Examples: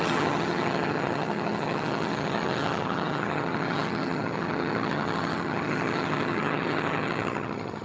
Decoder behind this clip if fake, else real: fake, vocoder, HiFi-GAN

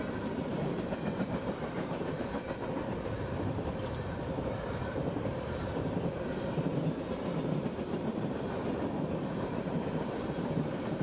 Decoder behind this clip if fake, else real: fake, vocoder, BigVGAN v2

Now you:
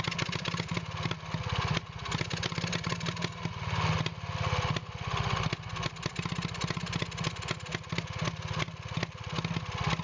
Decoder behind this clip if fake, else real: real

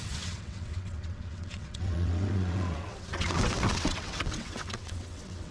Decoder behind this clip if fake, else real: fake, vocoder, WaveNeXt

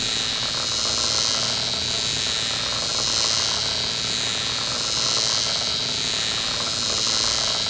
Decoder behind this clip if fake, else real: real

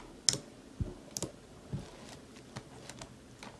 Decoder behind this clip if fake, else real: real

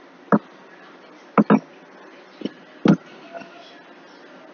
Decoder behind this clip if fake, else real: real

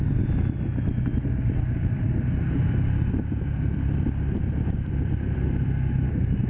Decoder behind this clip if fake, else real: fake, vocoder, BigVGAN v2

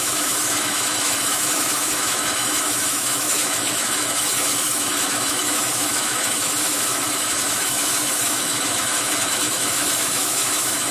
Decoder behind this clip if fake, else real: fake, autoencoder, DAC-VAE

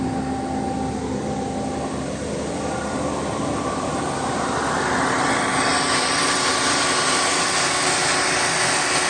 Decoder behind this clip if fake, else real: real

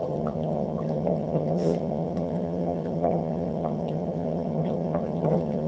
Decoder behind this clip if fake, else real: fake, vocoder, HiFi-GAN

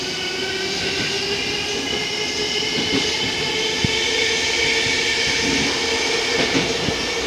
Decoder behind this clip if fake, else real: real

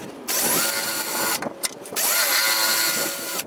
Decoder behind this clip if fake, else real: real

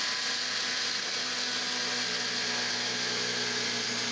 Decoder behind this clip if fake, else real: real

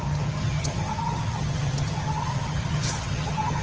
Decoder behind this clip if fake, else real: fake, vocoder, HiFi-GAN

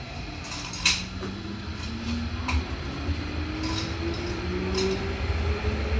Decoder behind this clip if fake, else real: real